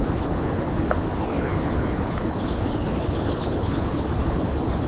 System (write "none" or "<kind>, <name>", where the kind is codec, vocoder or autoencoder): codec, HILCodec